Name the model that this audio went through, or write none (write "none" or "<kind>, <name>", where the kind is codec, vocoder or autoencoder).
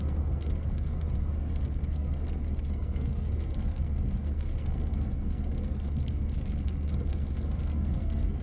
codec, SNAC